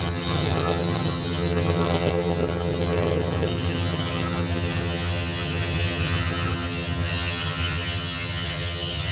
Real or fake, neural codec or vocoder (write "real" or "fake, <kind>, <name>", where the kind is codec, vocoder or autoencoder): fake, vocoder, HiFi-GAN